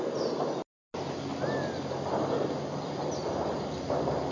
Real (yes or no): yes